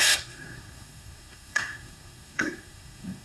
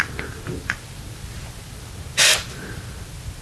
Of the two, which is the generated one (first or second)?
first